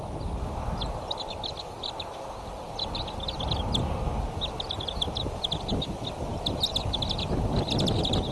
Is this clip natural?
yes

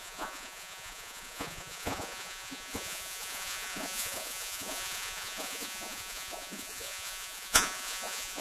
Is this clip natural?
no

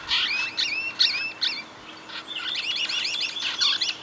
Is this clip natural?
yes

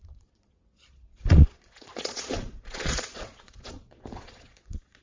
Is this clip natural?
no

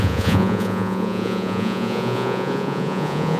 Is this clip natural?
no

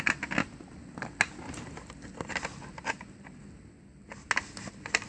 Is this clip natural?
yes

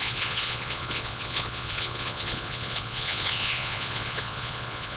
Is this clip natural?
no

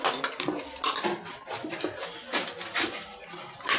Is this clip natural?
yes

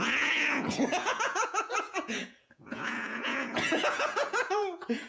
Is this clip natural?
no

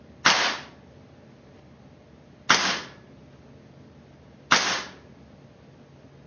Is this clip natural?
yes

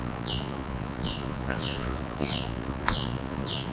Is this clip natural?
no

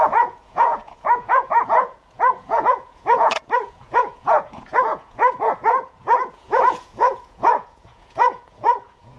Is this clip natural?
no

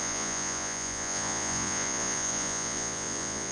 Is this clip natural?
no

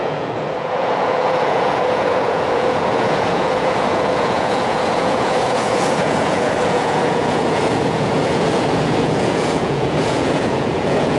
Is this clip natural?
no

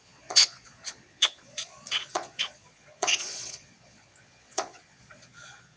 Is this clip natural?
no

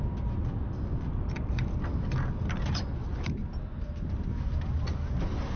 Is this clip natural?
yes